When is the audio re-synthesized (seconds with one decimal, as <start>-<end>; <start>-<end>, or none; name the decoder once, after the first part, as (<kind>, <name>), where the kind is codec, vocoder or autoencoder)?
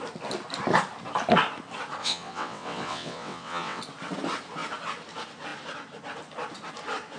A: 2.0-3.8 (vocoder, WaveNeXt)